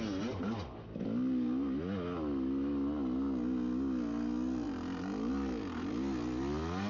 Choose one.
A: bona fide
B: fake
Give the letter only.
A